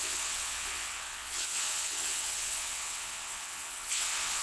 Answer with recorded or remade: remade